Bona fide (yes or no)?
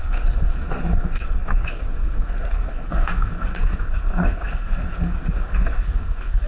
no